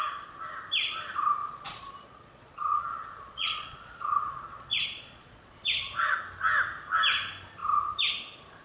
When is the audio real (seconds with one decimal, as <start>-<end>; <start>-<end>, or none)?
0.0-1.4; 6.2-8.6